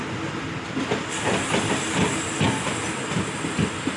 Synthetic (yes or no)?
no